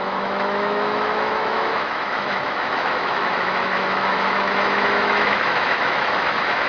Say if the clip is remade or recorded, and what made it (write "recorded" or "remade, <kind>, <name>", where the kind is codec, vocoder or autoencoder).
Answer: remade, autoencoder, DAC-VAE